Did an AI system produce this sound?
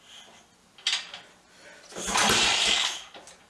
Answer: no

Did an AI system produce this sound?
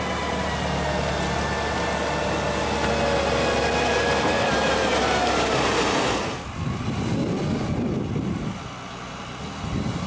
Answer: no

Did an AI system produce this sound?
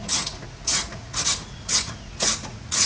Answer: yes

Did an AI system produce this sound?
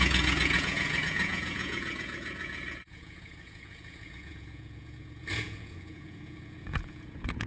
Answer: yes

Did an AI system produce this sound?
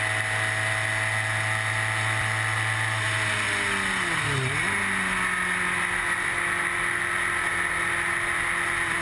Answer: no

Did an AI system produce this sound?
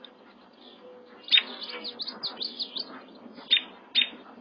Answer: no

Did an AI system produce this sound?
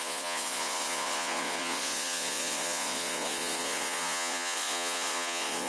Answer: yes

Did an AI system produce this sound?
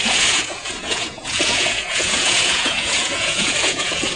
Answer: yes